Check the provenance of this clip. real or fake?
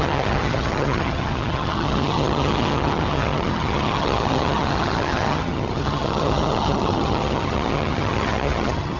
fake